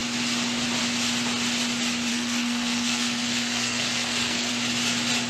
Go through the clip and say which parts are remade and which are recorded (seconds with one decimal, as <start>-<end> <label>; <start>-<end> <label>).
0.0-2.1 recorded; 2.1-4.5 remade; 4.5-5.3 recorded